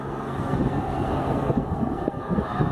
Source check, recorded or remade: remade